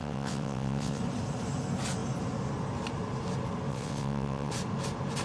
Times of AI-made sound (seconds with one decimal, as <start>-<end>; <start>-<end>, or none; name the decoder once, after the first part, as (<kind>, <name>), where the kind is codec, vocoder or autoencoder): 0.0-1.0 (vocoder, WaveNeXt); 3.7-4.5